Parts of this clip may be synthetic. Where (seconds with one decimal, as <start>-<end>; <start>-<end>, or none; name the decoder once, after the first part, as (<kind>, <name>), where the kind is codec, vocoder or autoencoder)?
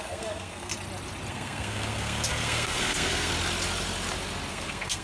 0.0-0.7 (codec, SNAC); 1.3-3.3; 4.5-5.0